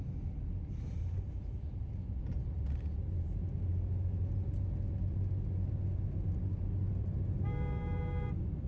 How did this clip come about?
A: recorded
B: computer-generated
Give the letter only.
A